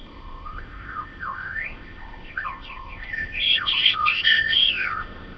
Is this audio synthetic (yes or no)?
yes